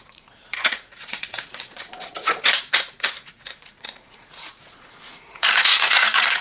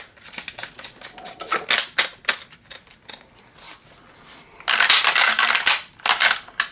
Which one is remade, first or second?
first